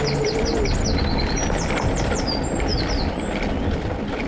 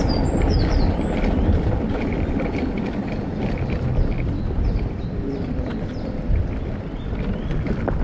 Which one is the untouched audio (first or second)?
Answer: first